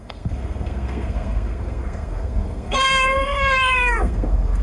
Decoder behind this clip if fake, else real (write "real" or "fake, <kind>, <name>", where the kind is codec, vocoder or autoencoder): fake, codec, SNAC